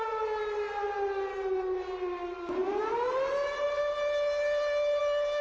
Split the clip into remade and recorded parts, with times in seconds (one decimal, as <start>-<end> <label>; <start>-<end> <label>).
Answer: 0.0-5.4 recorded